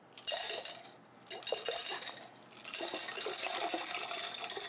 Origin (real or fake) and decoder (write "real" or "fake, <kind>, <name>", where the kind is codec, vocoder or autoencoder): real